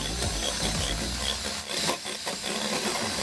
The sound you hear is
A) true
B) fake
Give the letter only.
A